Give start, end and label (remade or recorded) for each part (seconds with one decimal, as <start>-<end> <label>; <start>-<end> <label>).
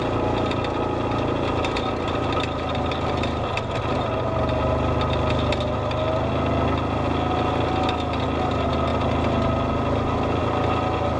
0.0-11.2 recorded